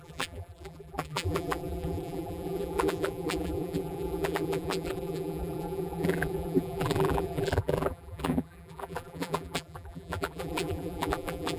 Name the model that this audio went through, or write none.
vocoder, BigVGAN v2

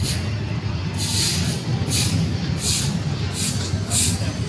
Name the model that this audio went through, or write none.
none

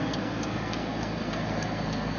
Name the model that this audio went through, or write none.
codec, SNAC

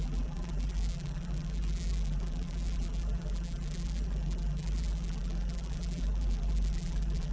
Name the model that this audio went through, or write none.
vocoder, BigVGAN v2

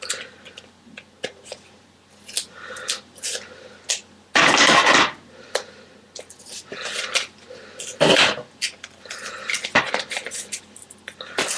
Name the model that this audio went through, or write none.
none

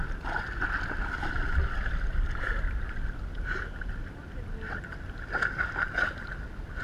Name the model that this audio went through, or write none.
none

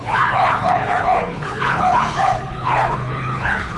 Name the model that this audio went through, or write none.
codec, HILCodec